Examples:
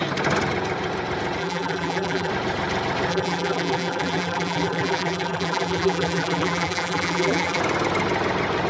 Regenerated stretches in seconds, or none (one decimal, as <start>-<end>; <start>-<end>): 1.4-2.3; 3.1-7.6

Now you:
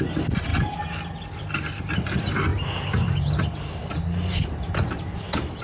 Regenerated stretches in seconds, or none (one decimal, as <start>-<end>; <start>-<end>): none

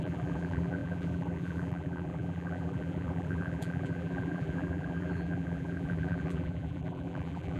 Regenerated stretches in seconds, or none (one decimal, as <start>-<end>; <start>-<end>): 0.0-7.6

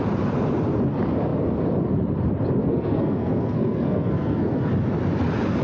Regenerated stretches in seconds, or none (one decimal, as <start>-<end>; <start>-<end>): 2.6-4.7

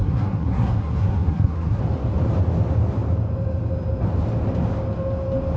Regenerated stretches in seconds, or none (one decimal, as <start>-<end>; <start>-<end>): 0.0-1.8

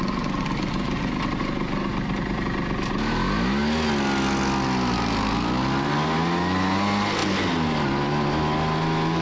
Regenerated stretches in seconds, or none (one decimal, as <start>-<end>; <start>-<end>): none